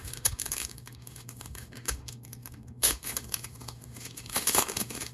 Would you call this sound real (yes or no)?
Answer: no